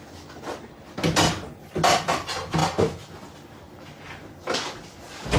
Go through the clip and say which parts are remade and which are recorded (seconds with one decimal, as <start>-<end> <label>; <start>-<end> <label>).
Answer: 0.0-5.4 recorded